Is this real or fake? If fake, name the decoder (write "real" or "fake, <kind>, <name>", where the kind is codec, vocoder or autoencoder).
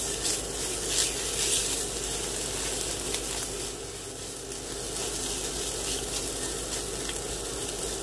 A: real